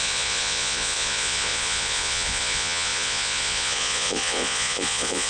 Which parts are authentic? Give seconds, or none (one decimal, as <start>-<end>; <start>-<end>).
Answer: none